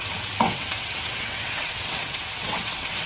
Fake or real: fake